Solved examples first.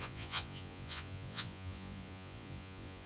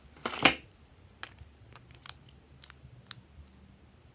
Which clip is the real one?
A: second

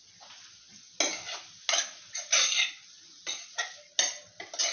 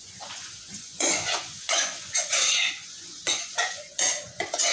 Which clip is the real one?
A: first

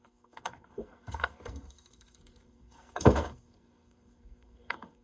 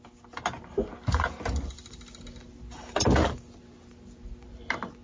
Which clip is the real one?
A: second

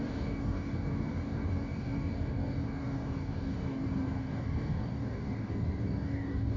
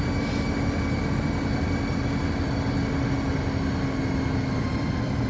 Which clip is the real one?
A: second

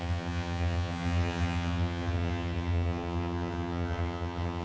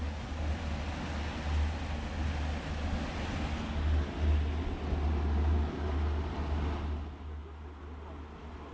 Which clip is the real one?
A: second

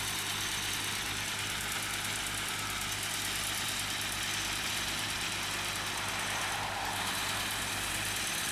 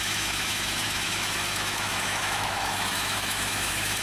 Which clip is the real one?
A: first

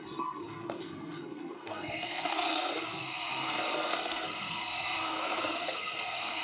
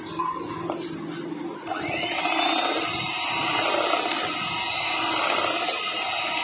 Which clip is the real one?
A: second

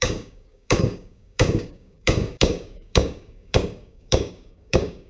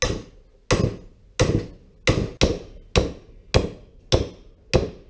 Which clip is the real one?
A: second